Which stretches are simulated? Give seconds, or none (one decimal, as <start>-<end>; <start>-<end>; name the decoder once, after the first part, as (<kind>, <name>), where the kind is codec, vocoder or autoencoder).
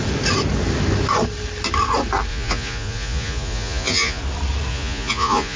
2.3-4.2 (vocoder, Vocos); 4.7-5.6